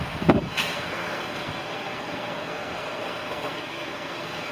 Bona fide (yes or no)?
no